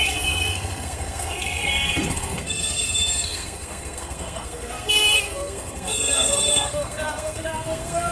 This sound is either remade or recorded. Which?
remade